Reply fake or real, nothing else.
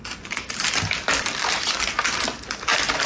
real